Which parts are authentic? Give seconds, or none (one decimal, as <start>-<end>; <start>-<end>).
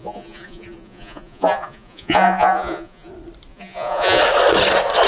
3.1-3.5; 4.2-5.1